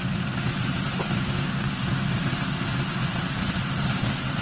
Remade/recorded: recorded